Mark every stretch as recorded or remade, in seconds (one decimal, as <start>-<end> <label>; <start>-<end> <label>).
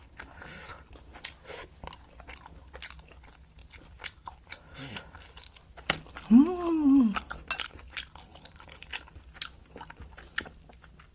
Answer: 0.0-3.6 recorded; 3.6-4.6 remade; 4.6-8.3 recorded; 8.3-9.1 remade; 9.1-11.1 recorded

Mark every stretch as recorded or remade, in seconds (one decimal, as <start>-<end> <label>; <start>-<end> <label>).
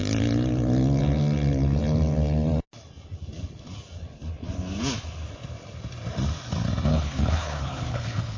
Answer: 0.0-6.9 recorded; 6.9-8.4 remade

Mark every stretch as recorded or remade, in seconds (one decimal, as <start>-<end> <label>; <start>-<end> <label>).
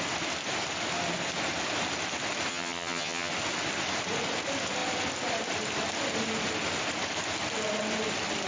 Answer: 0.0-2.5 recorded; 2.5-3.3 remade; 3.3-8.5 recorded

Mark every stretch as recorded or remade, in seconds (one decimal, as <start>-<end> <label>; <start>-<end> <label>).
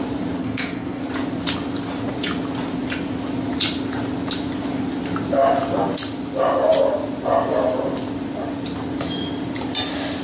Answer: 0.0-0.4 recorded; 0.4-1.0 remade; 1.0-10.2 recorded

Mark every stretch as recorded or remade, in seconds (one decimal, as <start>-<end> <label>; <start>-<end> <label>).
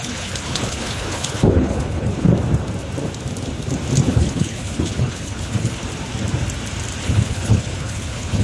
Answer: 0.0-2.3 remade; 2.3-4.1 recorded; 4.1-5.8 remade; 5.8-7.0 recorded; 7.0-8.4 remade